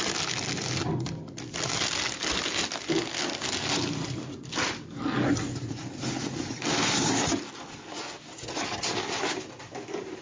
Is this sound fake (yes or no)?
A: no